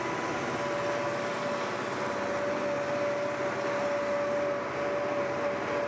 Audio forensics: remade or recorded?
recorded